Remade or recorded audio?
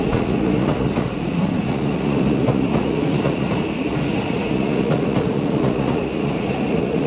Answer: remade